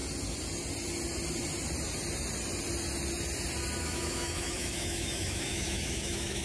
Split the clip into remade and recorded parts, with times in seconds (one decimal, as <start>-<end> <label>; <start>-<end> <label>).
0.0-3.8 recorded; 3.8-6.4 remade